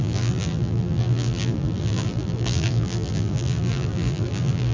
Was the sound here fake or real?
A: fake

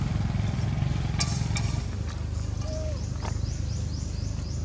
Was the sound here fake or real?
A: real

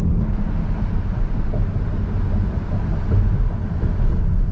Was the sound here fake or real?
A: real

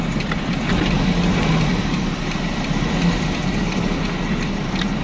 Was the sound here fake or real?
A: fake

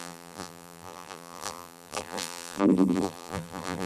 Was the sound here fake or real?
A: fake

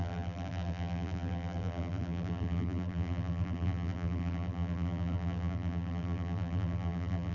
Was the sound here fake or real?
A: fake